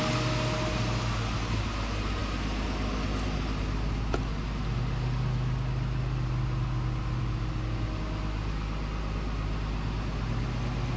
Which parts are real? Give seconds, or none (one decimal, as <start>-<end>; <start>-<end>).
0.0-11.0